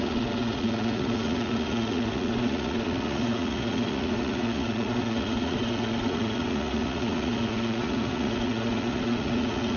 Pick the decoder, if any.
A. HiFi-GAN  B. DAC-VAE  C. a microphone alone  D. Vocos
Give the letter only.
D